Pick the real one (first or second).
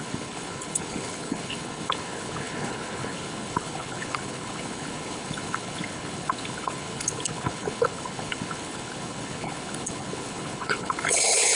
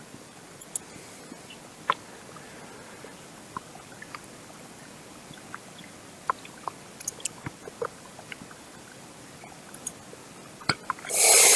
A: second